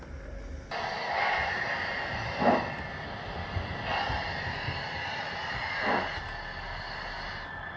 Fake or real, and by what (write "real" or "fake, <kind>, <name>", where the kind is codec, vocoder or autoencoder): real